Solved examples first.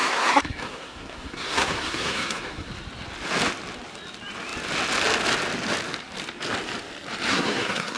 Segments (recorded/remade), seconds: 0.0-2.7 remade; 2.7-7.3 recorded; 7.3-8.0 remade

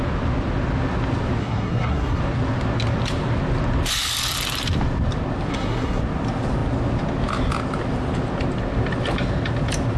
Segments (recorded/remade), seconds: 0.0-1.4 recorded; 1.4-2.2 remade; 2.2-5.5 recorded; 5.5-6.0 remade; 6.0-10.0 recorded

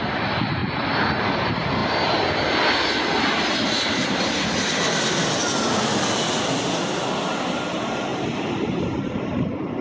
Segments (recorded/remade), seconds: 0.0-9.8 recorded

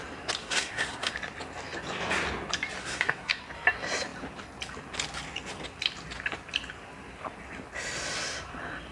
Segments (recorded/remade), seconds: 0.0-0.4 recorded; 0.4-1.1 remade; 1.1-2.8 recorded; 2.8-3.4 remade; 3.4-8.9 recorded

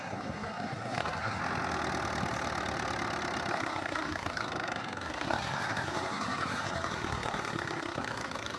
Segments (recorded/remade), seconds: 0.0-1.4 remade; 1.4-3.5 recorded; 3.5-8.6 remade

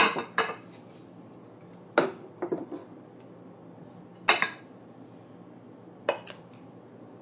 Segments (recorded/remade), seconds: 0.0-7.2 recorded